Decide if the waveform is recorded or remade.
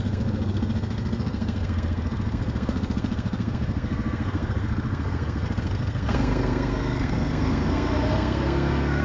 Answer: remade